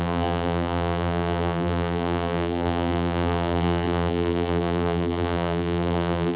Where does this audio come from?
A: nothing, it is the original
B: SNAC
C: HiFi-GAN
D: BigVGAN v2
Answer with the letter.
D